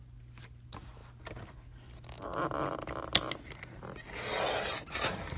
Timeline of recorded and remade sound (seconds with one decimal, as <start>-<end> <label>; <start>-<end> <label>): 0.0-5.4 recorded